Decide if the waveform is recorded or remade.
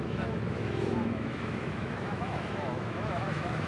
remade